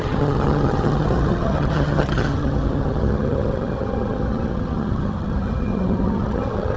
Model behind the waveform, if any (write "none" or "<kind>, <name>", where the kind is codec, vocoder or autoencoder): vocoder, HiFi-GAN